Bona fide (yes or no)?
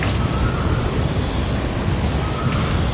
yes